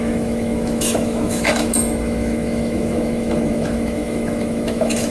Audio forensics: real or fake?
fake